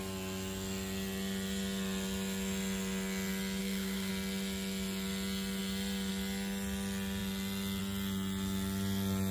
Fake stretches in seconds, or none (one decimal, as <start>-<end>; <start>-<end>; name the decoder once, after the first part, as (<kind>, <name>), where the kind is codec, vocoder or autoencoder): 3.6-4.1 (codec, SNAC)